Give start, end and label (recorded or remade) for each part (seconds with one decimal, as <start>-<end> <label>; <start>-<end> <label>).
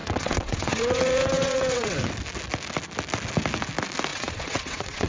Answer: 0.0-2.1 remade; 2.1-4.1 recorded; 4.1-5.1 remade